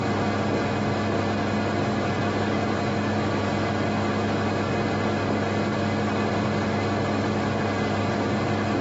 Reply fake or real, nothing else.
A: real